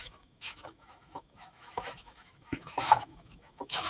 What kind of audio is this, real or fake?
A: fake